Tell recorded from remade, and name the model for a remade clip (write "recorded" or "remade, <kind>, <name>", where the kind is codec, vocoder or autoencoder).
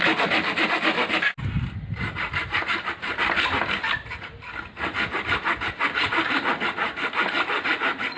recorded